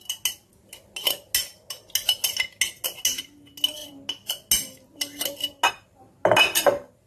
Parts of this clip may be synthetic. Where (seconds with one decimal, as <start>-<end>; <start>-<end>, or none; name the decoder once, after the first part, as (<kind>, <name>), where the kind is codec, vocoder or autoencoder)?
none